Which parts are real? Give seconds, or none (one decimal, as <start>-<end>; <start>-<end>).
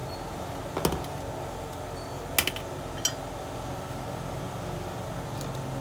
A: 0.0-5.8